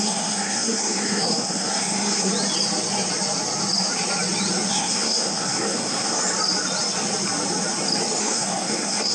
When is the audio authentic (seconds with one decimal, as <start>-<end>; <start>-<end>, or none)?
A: 2.3-4.7; 6.2-8.2

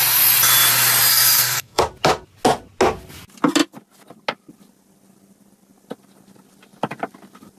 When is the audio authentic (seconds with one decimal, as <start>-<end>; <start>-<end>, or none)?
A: 0.0-1.1; 1.8-7.6

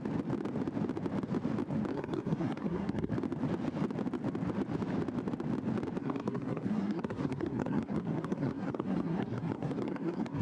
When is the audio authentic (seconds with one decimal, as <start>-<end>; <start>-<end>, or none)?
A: 0.0-1.9; 3.1-6.0

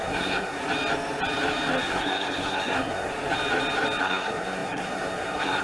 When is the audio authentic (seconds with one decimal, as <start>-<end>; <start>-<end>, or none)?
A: 0.6-1.8; 3.1-4.0

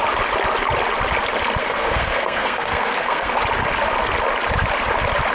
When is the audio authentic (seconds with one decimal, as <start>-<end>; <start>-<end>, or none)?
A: 0.0-1.6; 3.4-5.3